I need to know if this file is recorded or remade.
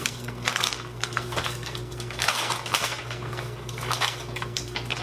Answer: remade